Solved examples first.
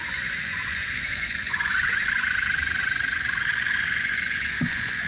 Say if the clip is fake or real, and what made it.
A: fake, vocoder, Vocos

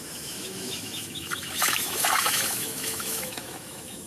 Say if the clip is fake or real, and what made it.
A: fake, autoencoder, DAC-VAE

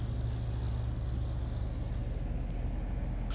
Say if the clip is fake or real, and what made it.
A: real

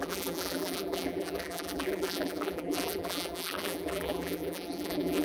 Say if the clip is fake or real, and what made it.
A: fake, vocoder, BigVGAN v2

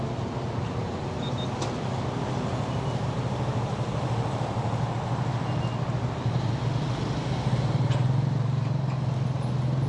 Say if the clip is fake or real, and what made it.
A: real